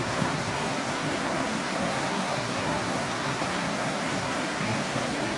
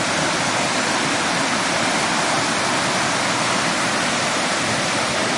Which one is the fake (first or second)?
first